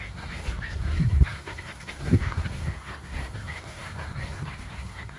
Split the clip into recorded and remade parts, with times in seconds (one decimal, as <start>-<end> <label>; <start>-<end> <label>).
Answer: 0.0-5.2 remade